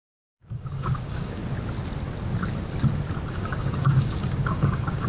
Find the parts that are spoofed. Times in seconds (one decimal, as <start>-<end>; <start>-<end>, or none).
0.0-1.4; 3.3-5.1